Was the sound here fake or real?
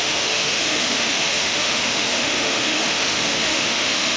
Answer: fake